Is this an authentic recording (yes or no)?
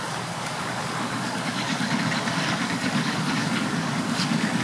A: no